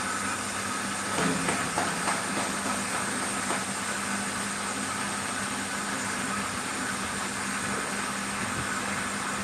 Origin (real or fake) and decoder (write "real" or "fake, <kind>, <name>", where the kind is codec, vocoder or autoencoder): real